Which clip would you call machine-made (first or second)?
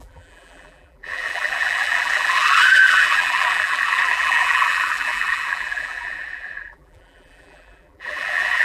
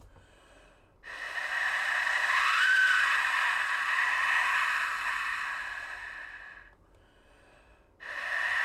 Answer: first